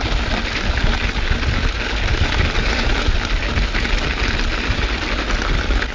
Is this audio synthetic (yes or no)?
no